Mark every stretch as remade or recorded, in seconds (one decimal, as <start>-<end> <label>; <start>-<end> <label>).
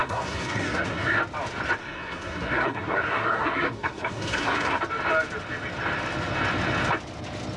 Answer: 0.0-1.2 remade; 1.2-1.8 recorded; 1.8-4.8 remade; 4.8-7.6 recorded